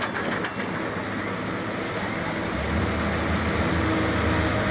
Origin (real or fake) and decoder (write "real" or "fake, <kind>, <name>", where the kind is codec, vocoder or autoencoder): real